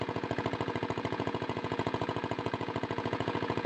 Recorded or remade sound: remade